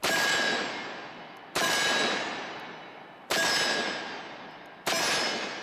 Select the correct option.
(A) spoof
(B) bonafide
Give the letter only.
B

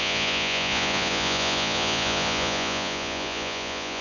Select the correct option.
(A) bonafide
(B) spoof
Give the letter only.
B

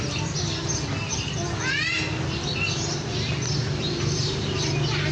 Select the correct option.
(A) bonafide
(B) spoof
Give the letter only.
A